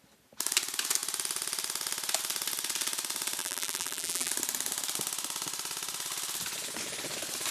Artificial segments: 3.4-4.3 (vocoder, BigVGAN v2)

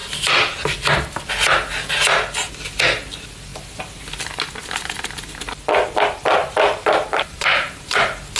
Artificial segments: 6.4-8.0 (vocoder, BigVGAN v2)

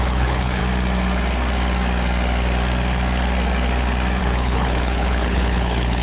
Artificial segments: 0.0-0.6 (codec, HILCodec); 4.2-6.0

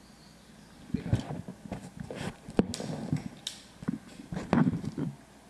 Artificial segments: none

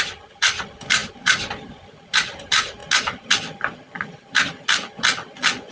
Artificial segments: 0.0-2.8 (vocoder, BigVGAN v2)

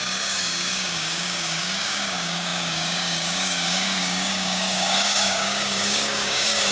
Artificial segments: 0.0-6.7 (codec, DAC)

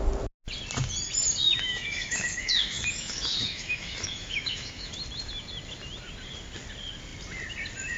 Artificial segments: 1.4-4.9 (autoencoder, DAC-VAE)

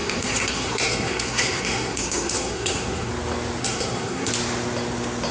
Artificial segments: 0.0-3.1 (codec, SNAC); 3.6-4.3